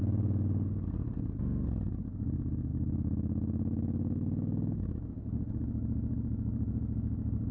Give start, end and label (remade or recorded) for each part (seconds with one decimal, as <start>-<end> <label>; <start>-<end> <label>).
0.0-2.7 recorded; 2.7-7.5 remade